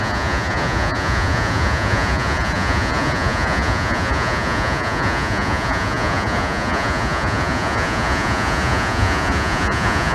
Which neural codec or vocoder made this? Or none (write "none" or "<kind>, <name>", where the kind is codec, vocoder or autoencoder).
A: vocoder, Vocos